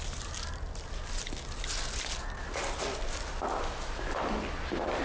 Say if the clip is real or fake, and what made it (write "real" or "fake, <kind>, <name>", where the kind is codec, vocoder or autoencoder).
real